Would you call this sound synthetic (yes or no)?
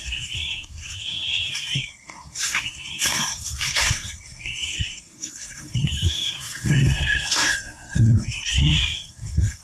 yes